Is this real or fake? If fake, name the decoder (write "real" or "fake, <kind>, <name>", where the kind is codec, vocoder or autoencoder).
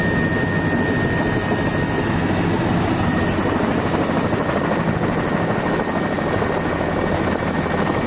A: real